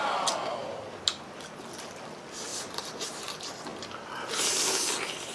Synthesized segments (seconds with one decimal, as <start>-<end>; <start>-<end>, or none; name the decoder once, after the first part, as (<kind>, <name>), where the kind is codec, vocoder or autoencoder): 2.5-3.3 (vocoder, BigVGAN v2)